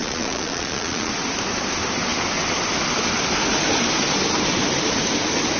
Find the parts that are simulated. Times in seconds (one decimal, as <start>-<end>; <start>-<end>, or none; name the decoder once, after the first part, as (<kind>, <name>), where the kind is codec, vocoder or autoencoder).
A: 0.0-1.1 (vocoder, Vocos)